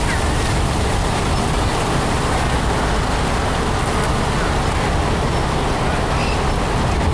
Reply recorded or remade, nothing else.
recorded